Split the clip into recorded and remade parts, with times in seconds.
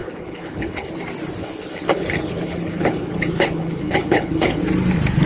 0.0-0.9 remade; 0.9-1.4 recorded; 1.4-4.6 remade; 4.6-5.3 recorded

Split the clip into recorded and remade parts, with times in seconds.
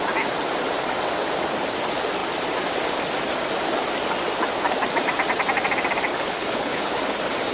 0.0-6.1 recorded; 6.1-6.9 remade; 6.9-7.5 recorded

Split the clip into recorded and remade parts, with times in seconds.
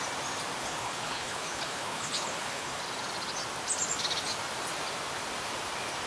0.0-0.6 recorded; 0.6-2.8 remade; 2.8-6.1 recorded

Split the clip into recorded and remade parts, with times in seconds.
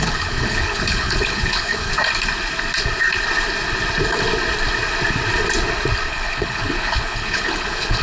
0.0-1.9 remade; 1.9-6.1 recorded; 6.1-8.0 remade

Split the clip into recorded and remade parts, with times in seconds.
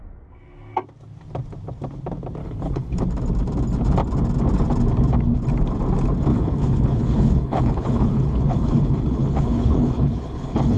0.0-2.4 recorded; 2.4-3.0 remade; 3.0-6.3 recorded; 6.3-10.8 remade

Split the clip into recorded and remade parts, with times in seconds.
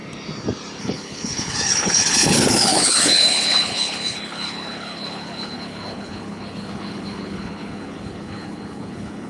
0.0-0.8 recorded; 0.8-9.3 remade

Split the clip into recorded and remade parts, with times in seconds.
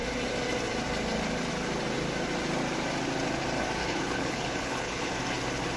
0.0-3.8 recorded; 3.8-5.1 remade; 5.1-5.8 recorded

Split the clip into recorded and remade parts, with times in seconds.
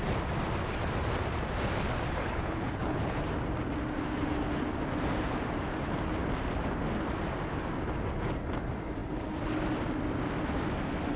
0.0-2.2 recorded; 2.2-3.2 remade; 3.2-11.2 recorded